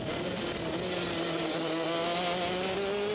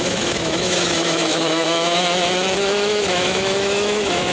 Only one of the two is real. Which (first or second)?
first